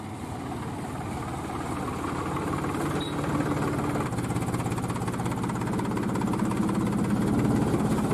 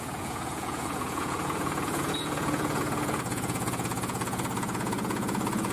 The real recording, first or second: first